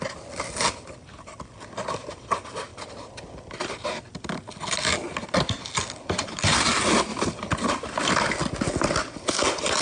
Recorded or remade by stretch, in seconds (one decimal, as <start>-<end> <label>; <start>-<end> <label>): 0.0-9.8 recorded